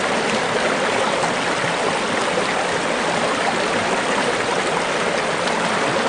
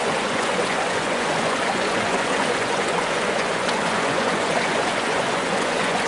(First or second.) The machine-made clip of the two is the second